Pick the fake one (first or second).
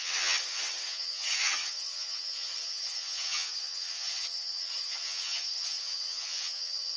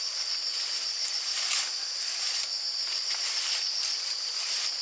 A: first